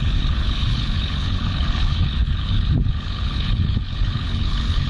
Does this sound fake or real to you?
fake